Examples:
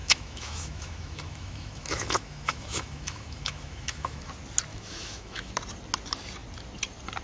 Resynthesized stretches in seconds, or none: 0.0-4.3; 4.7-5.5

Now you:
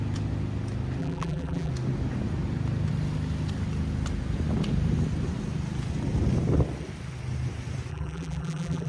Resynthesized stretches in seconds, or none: 1.0-1.7; 7.9-8.9

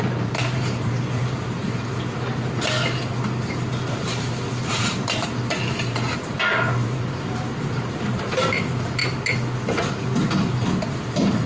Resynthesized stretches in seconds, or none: 0.0-1.9; 4.0-9.0; 11.0-11.5

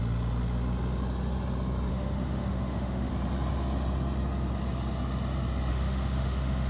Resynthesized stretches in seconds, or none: 1.9-3.1; 5.7-6.7

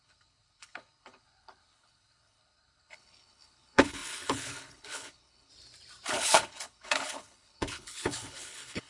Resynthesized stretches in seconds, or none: 0.0-5.5; 6.1-8.9

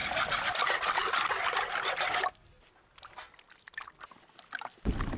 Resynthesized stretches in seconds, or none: none

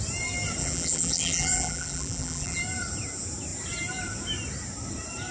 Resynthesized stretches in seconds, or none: 0.6-2.6